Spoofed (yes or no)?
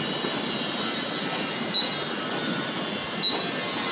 no